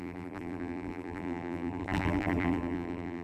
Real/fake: fake